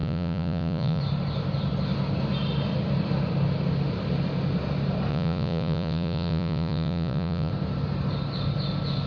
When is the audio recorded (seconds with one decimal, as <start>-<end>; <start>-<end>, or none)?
1.0-5.1; 7.5-9.1